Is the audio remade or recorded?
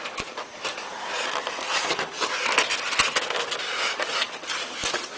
remade